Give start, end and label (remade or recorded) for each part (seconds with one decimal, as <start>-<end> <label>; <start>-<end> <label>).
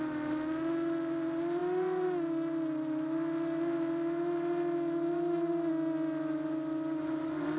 0.0-7.6 recorded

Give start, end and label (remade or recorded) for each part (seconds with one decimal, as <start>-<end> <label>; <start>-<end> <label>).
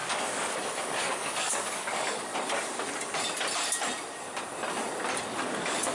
0.0-2.3 remade; 2.3-5.2 recorded; 5.2-5.9 remade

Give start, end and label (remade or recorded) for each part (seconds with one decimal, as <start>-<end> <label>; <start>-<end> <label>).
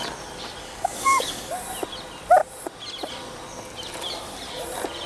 0.0-0.6 recorded; 0.6-1.5 remade; 1.5-5.1 recorded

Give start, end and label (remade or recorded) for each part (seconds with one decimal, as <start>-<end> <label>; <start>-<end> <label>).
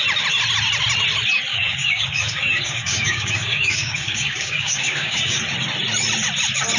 0.0-1.5 recorded; 1.5-5.4 remade; 5.4-6.8 recorded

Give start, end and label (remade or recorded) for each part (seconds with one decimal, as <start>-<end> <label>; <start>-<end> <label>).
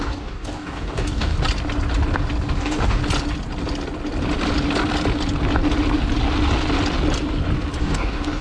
0.0-1.3 remade; 1.3-2.6 recorded; 2.6-3.0 remade; 3.0-7.8 recorded; 7.8-8.4 remade